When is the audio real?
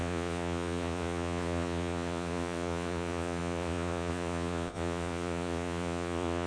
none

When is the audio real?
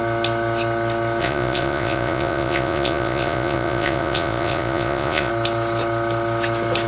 0.0-1.2; 5.3-6.9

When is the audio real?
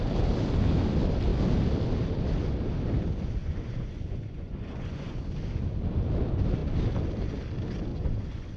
0.0-3.4; 5.2-7.9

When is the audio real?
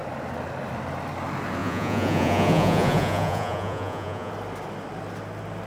0.0-1.6; 4.3-5.7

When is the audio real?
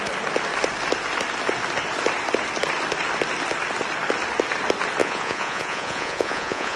0.0-5.0